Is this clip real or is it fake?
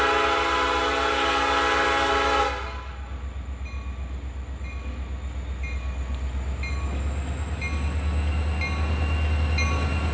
real